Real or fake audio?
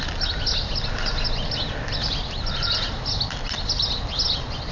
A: real